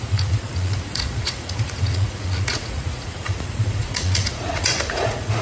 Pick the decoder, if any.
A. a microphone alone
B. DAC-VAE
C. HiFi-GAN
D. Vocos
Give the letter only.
D